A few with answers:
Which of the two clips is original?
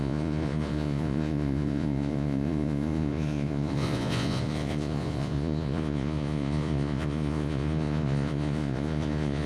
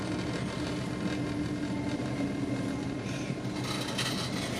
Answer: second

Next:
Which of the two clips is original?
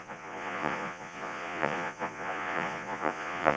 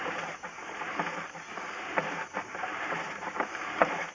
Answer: second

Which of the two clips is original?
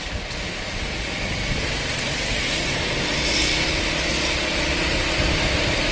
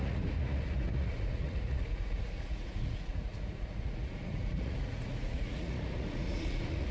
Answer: first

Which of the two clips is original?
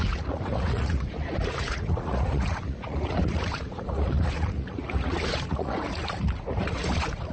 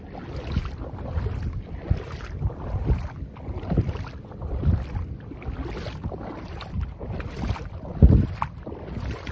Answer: second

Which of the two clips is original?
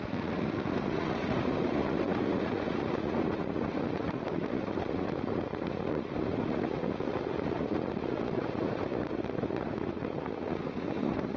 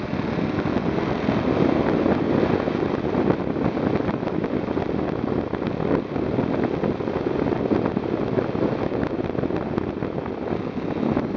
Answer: second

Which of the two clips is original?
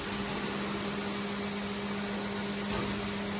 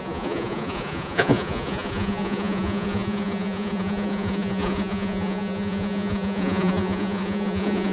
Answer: first